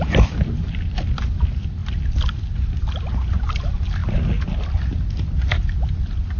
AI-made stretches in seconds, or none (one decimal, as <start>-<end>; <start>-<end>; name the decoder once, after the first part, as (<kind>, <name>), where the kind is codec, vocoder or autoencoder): none